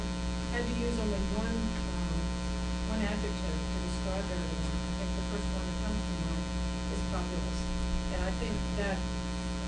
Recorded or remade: recorded